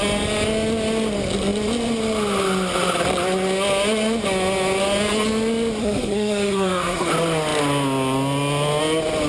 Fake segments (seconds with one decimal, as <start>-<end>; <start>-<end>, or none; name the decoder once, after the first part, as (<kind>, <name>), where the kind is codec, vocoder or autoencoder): 5.8-7.1 (codec, SNAC)